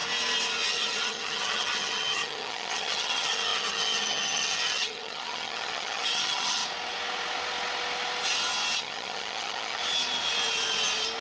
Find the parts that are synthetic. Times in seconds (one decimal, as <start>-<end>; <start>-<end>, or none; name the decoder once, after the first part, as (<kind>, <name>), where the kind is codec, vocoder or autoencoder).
0.7-6.6 (vocoder, HiFi-GAN); 8.8-9.8